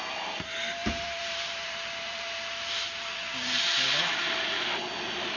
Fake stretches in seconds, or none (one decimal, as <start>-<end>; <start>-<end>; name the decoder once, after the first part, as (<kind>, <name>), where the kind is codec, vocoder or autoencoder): 0.8-4.0 (vocoder, BigVGAN v2)